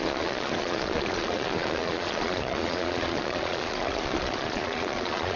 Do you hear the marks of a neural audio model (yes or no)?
yes